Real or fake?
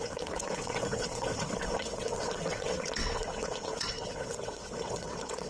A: fake